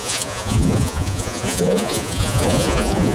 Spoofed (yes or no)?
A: yes